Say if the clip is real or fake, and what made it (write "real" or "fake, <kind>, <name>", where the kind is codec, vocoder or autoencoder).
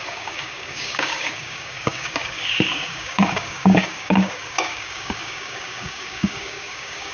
fake, codec, DAC